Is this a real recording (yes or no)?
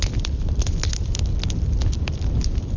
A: yes